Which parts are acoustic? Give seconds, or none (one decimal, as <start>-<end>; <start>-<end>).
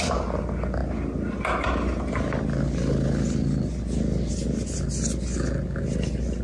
0.0-6.4